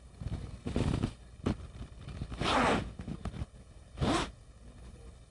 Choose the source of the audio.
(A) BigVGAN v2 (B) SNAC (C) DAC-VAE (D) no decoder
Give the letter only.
D